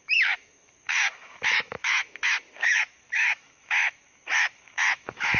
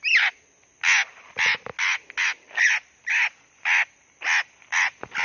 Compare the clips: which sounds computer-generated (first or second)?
first